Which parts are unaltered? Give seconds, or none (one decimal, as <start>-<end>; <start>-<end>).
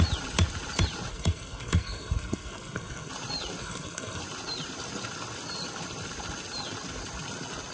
0.0-1.1; 3.1-3.6; 4.2-7.7